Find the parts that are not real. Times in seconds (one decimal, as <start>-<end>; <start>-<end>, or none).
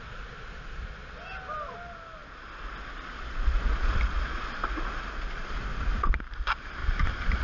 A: 6.8-7.4